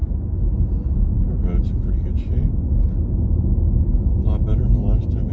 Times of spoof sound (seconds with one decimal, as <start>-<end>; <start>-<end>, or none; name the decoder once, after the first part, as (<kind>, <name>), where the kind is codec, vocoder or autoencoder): none